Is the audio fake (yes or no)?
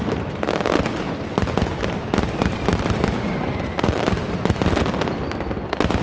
no